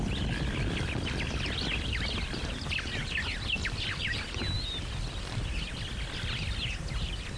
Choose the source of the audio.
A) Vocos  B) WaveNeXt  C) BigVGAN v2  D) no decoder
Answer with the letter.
D